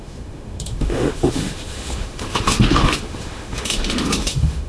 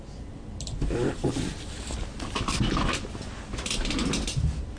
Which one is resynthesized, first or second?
first